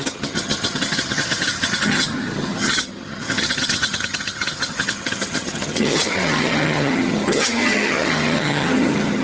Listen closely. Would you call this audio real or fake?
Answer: fake